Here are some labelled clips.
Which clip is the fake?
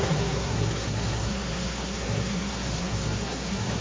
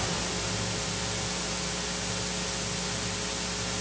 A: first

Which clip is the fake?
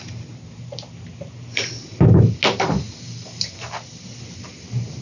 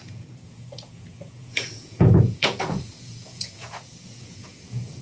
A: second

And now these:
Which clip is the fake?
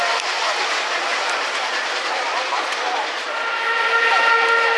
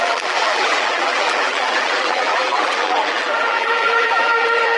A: second